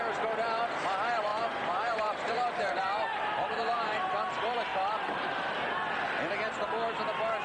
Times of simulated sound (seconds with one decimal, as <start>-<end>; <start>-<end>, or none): 1.3-4.3